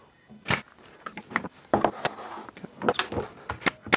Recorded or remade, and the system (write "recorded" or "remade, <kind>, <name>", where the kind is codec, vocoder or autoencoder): recorded